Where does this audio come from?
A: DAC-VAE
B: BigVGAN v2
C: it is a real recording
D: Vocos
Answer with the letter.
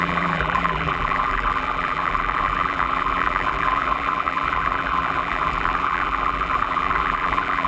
B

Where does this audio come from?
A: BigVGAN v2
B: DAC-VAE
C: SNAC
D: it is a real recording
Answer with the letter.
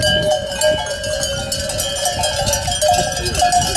D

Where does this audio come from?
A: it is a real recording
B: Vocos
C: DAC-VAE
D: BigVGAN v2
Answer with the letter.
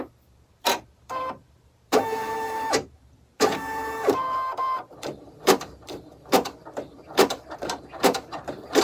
D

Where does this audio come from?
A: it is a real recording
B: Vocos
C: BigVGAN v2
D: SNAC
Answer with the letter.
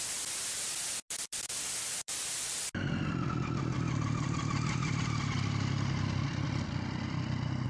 A